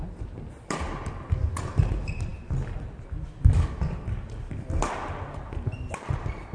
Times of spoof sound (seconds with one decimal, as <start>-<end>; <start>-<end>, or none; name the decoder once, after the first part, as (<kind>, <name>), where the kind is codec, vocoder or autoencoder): none